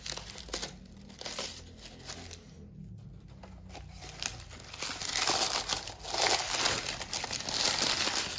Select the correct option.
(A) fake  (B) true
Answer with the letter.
B